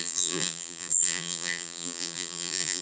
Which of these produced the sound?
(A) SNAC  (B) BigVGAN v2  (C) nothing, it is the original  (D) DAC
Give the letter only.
B